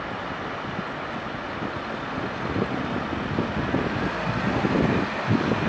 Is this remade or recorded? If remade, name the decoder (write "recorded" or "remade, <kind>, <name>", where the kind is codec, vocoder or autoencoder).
recorded